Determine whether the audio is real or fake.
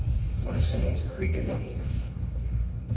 fake